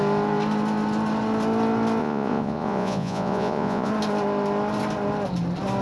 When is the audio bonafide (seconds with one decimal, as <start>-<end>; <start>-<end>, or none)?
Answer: 0.0-2.0; 3.9-5.8